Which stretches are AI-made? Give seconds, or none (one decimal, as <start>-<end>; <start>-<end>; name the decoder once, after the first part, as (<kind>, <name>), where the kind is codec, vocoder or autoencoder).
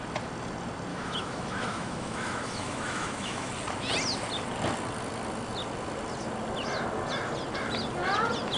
0.9-3.5 (autoencoder, DAC-VAE)